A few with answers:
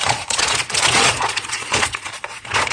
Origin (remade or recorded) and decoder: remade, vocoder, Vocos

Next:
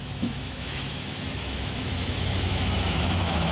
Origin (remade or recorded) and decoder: remade, autoencoder, DAC-VAE